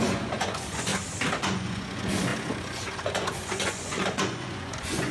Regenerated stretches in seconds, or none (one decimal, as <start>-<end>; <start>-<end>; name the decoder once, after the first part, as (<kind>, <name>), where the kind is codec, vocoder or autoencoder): 0.0-0.9 (vocoder, Vocos); 1.4-5.1